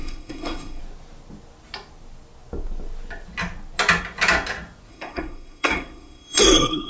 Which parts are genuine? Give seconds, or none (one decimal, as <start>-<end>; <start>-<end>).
0.8-4.9